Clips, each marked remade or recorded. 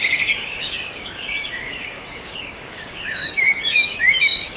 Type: remade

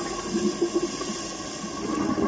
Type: recorded